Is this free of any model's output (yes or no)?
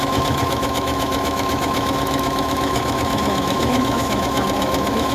no